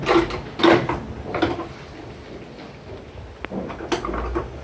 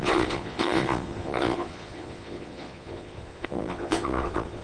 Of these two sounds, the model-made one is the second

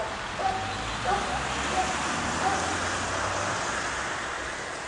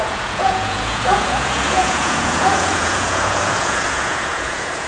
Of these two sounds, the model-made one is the second